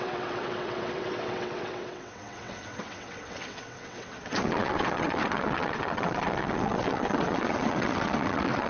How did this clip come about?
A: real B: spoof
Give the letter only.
B